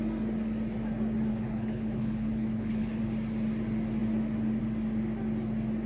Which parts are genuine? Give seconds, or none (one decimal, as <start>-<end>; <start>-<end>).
0.0-1.3; 3.0-5.9